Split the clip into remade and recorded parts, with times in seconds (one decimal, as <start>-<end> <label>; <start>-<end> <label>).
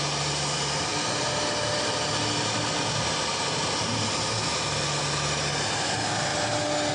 0.0-6.9 recorded